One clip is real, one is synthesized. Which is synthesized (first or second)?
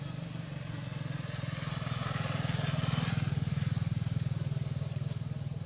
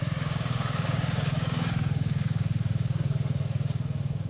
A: second